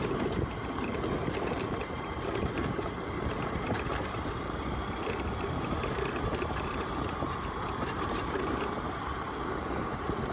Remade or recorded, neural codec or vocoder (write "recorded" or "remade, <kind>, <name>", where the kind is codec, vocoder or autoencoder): remade, vocoder, BigVGAN v2